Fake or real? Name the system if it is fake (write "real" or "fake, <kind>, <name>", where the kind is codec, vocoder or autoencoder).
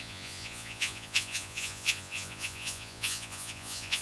fake, vocoder, Vocos